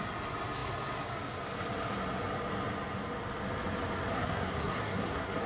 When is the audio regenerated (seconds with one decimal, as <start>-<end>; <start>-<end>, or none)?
4.1-5.5